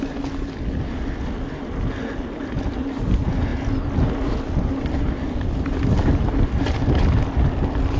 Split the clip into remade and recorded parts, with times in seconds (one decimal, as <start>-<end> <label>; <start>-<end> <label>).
0.0-8.0 recorded